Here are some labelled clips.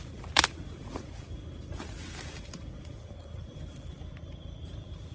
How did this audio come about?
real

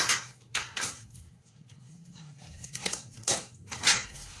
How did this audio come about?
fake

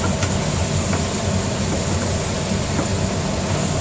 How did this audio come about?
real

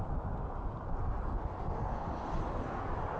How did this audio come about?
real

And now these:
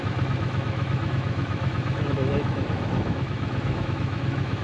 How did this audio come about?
fake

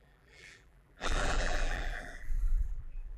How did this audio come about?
fake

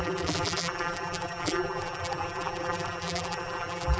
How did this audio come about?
fake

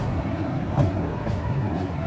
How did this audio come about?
fake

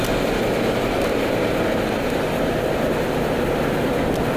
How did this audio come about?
real